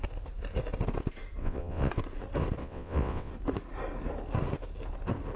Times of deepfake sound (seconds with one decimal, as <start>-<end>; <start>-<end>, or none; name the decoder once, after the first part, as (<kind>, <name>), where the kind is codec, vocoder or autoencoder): 1.4-1.9 (vocoder, WaveNeXt); 2.6-3.3